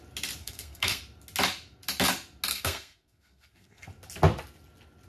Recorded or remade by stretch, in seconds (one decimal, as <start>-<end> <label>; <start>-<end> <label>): 0.0-0.4 recorded; 0.4-1.0 remade; 1.0-2.5 recorded; 2.5-3.9 remade; 3.9-5.1 recorded